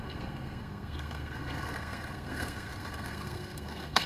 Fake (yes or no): yes